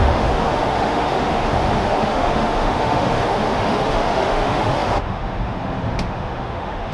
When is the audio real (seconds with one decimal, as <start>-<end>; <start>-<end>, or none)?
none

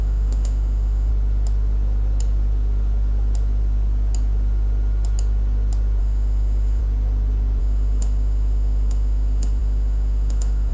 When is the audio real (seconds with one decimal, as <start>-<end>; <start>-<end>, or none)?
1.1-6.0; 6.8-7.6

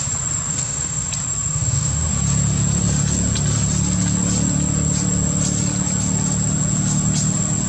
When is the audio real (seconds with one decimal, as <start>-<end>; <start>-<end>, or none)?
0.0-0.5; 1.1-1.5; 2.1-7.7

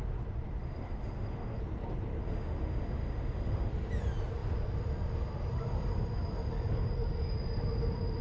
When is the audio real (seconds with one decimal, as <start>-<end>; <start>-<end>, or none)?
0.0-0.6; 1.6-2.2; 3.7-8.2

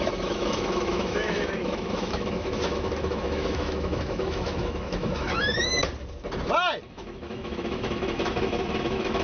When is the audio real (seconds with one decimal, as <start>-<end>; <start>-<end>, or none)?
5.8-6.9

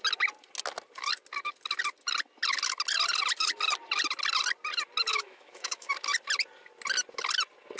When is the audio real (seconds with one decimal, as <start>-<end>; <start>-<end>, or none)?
0.0-5.1; 5.9-7.8

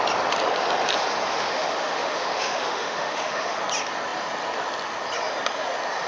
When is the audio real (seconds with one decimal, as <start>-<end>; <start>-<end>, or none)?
0.0-1.3; 3.6-6.1